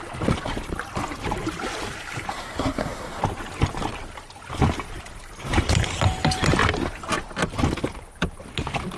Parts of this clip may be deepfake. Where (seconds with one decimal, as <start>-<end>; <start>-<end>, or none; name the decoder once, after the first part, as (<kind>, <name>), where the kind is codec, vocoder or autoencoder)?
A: 2.3-3.2 (codec, SNAC)